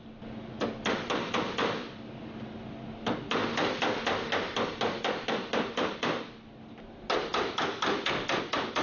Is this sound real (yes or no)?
yes